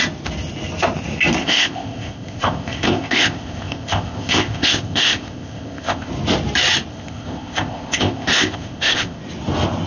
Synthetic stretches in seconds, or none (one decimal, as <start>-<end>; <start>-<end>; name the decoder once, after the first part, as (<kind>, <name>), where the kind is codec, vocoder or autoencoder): 1.4-6.1 (codec, ZipCodec); 6.9-9.2